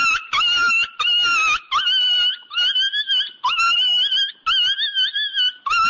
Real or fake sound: real